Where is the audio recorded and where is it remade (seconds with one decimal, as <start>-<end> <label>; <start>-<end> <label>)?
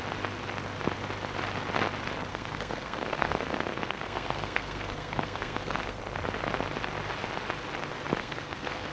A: 0.0-2.3 recorded; 2.3-6.0 remade; 6.0-8.2 recorded; 8.2-8.9 remade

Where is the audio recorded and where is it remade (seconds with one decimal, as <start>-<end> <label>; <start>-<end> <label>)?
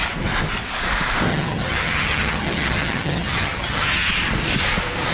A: 0.0-1.3 recorded; 1.3-4.1 remade; 4.1-5.1 recorded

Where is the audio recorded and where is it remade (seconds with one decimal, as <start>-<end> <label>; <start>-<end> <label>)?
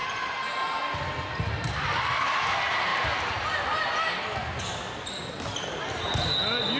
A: 0.0-6.8 recorded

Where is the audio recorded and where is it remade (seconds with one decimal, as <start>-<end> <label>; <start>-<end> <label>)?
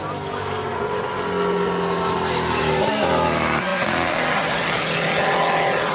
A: 0.0-5.9 recorded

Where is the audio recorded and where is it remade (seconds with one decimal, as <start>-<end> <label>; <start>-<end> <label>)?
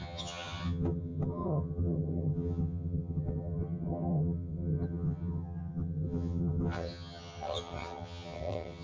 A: 0.0-8.8 remade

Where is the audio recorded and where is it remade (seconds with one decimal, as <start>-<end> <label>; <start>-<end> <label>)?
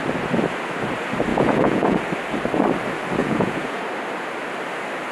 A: 0.0-1.3 recorded; 1.3-2.0 remade; 2.0-3.2 recorded; 3.2-3.8 remade; 3.8-5.1 recorded